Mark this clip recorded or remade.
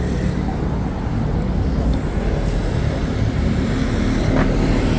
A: recorded